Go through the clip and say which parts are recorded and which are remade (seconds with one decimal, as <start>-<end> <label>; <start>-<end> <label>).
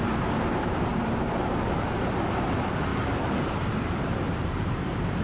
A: 0.0-5.2 remade